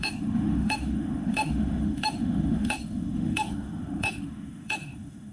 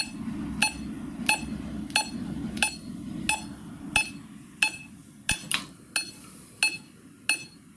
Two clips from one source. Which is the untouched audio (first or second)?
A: second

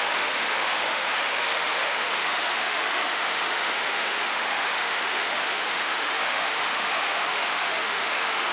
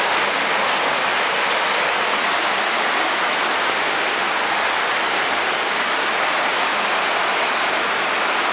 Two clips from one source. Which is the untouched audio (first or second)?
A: second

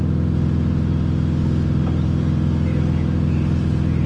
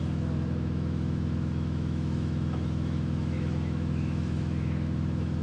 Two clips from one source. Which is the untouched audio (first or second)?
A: first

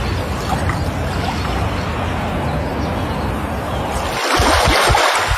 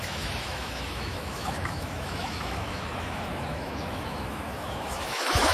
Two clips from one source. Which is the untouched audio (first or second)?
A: first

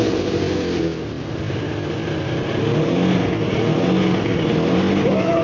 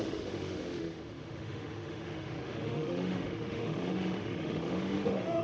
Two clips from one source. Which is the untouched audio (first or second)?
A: first